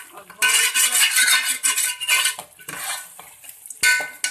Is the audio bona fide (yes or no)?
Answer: yes